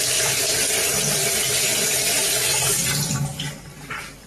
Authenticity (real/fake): real